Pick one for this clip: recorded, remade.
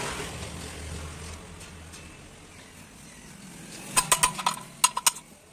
recorded